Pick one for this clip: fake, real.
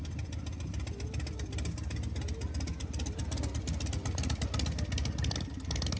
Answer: real